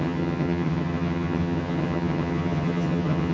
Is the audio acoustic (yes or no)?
no